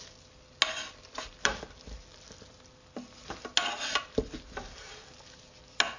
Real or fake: real